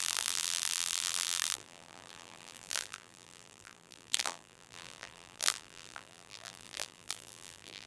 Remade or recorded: remade